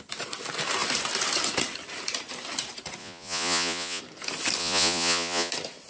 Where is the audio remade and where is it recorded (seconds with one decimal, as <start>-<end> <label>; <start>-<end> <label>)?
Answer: 0.0-3.0 recorded; 3.0-4.0 remade; 4.0-4.6 recorded; 4.6-5.5 remade; 5.5-5.9 recorded